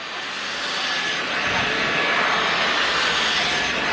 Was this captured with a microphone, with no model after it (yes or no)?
yes